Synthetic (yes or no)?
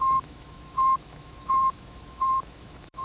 yes